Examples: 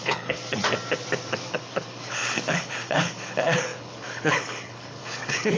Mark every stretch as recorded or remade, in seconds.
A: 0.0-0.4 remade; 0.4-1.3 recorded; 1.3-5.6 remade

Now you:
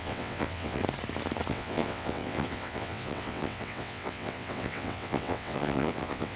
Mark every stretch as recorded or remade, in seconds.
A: 0.0-0.8 remade; 0.8-1.5 recorded; 1.5-6.4 remade

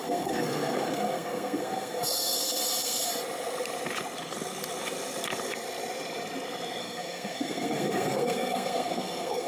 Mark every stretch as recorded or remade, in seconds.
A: 0.0-3.1 remade; 3.1-6.8 recorded; 6.8-9.5 remade

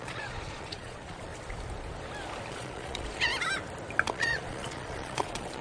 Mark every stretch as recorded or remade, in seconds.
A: 0.0-1.3 remade; 1.3-2.5 recorded; 2.5-3.3 remade; 3.3-4.1 recorded; 4.1-5.6 remade

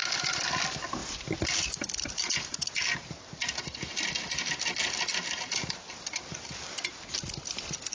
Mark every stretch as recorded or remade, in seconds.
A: 0.0-7.9 recorded